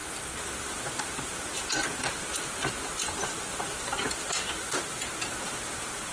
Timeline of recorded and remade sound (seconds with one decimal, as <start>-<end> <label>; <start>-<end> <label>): 0.0-6.1 recorded